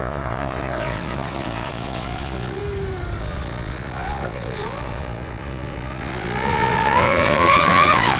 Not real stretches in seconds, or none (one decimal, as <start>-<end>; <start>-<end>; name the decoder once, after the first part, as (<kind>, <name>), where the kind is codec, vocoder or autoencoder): 0.0-2.6 (vocoder, Vocos); 3.2-8.2